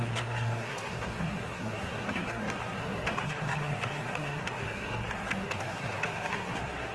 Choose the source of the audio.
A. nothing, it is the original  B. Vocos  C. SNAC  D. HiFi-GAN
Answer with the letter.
C